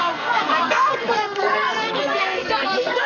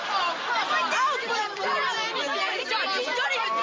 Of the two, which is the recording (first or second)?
second